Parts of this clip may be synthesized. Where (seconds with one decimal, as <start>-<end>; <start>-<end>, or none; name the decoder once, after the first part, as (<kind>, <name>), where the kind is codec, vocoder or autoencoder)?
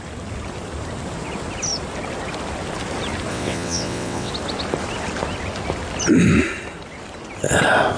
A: 3.3-4.3 (vocoder, WaveNeXt)